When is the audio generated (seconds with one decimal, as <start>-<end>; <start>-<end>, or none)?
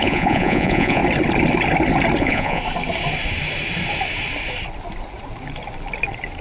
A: 0.0-1.0; 2.2-2.6